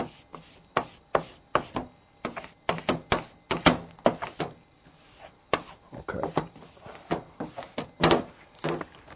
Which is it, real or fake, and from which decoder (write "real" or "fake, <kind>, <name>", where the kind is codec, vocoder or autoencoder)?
real